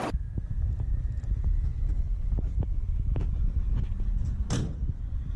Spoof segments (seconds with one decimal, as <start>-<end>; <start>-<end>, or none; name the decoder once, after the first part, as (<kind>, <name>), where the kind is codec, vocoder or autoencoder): none